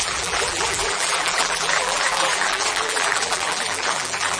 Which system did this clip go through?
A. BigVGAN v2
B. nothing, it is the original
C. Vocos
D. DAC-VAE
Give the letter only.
A